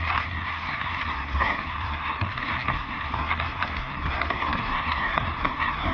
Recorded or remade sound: remade